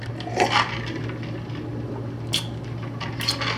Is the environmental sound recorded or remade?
recorded